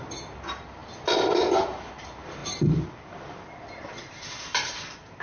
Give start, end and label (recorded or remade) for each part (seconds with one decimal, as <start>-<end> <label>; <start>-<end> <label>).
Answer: 0.0-5.2 recorded